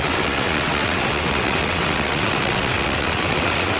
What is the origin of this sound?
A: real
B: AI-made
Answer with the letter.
B